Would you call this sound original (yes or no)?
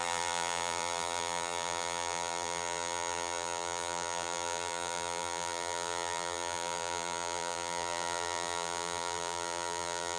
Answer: no